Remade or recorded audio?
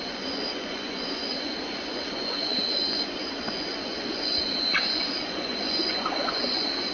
remade